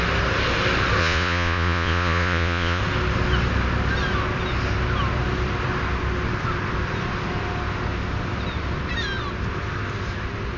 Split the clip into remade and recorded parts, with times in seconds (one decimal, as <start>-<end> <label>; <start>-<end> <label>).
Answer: 0.0-1.0 recorded; 1.0-2.8 remade; 2.8-10.6 recorded